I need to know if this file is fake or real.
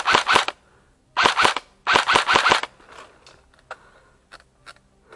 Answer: real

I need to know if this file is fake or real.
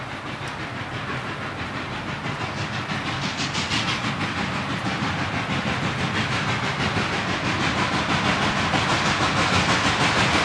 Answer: real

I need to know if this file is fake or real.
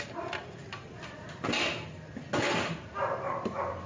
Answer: real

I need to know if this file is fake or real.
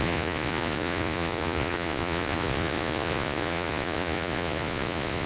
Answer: fake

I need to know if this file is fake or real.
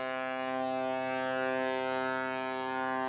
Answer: real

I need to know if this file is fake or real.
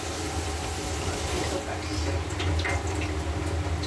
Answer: real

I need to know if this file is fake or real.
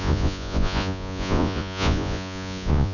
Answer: fake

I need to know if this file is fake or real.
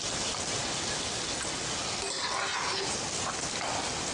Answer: real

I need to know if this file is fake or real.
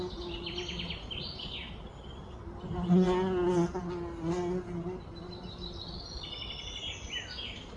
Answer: real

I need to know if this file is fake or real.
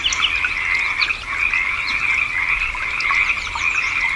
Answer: real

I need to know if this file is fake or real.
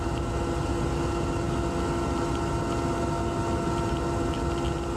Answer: real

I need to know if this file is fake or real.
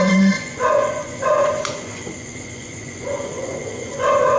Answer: fake